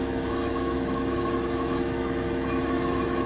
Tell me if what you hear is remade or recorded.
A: remade